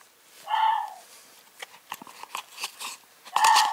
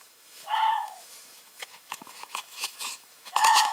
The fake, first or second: second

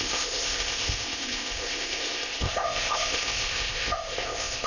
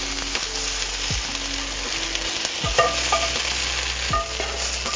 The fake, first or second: first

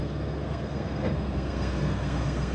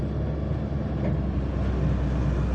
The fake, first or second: first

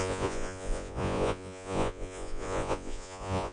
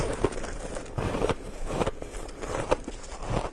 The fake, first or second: first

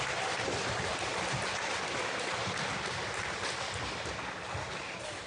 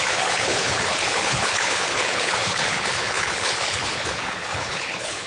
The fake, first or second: second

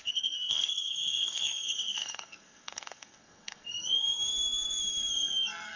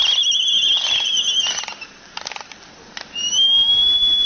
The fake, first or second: first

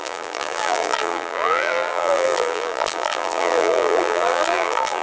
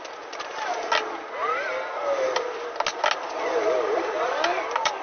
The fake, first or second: first